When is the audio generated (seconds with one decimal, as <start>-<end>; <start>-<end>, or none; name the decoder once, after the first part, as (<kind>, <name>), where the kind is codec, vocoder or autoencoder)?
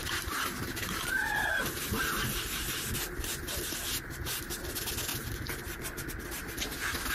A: 0.0-2.0 (vocoder, BigVGAN v2); 5.1-5.8